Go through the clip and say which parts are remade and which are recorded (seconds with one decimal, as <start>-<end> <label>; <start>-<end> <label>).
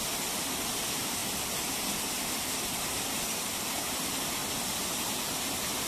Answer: 0.0-5.9 recorded